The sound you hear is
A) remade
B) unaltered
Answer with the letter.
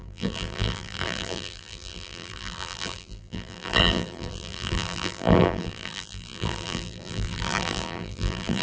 A